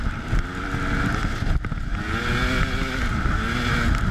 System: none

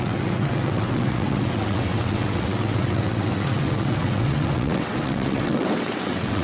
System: vocoder, WaveNeXt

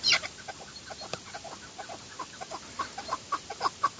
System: none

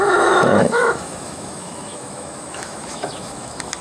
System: autoencoder, DAC-VAE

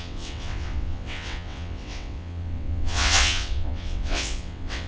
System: vocoder, WaveNeXt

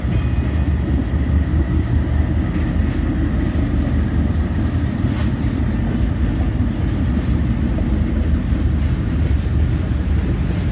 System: none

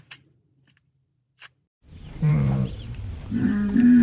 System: vocoder, BigVGAN v2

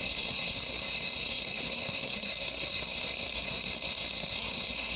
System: codec, SNAC